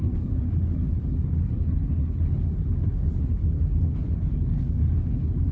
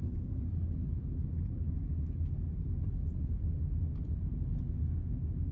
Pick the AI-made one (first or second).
first